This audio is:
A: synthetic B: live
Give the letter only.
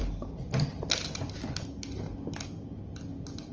B